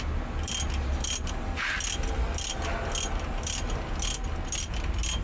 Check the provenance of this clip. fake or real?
real